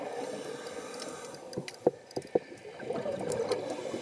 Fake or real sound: real